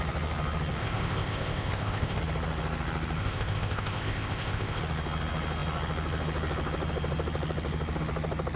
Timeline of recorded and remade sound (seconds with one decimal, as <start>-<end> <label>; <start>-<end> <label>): 0.0-0.8 recorded; 0.8-2.2 remade; 2.2-3.2 recorded; 3.2-4.8 remade; 4.8-8.6 recorded